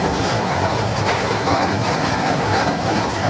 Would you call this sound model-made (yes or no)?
yes